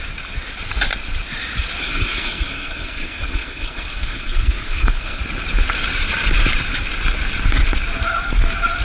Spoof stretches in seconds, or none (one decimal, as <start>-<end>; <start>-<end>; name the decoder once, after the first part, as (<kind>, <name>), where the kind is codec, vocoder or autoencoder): 1.8-5.2 (codec, SNAC)